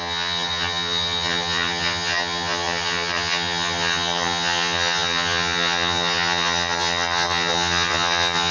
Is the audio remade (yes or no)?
yes